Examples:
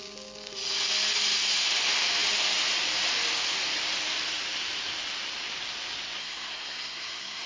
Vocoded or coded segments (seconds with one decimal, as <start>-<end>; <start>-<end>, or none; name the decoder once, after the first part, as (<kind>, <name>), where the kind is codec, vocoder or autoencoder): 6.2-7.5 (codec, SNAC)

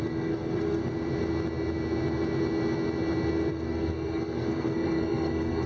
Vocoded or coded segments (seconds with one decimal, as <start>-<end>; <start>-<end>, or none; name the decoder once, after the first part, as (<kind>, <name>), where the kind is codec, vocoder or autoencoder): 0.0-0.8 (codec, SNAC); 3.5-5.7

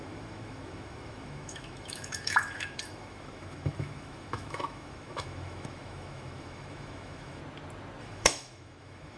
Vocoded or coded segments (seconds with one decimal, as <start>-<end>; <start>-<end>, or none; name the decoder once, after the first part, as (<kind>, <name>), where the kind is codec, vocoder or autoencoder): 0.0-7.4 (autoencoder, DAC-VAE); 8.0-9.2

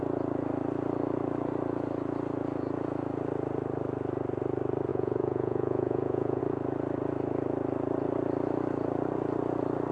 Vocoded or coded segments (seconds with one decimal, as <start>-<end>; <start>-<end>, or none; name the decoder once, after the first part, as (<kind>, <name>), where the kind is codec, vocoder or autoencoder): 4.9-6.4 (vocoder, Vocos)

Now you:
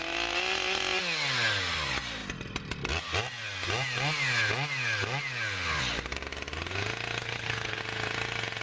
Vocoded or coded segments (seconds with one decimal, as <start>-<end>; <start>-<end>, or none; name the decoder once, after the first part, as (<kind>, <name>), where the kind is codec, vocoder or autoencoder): 7.2-7.8 (codec, HILCodec)

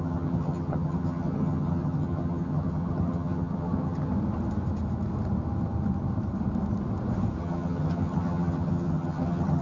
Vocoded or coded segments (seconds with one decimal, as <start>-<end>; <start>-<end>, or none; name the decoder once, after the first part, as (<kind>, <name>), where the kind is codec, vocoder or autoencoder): 0.0-4.1 (vocoder, HiFi-GAN); 7.4-9.6

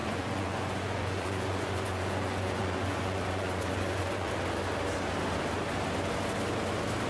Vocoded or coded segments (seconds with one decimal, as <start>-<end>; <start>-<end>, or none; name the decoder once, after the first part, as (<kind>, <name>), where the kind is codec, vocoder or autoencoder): 0.0-4.3 (vocoder, Vocos)

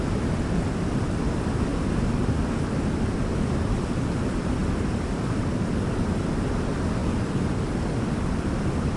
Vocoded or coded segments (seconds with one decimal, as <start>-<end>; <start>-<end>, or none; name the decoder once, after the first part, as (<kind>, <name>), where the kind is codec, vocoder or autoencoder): none